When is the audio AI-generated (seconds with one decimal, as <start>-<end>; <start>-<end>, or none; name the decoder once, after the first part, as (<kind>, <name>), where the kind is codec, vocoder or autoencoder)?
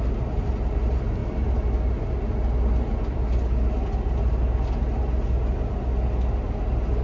none